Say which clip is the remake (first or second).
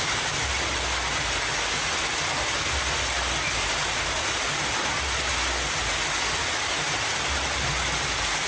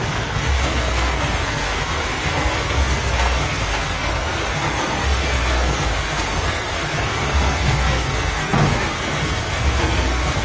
second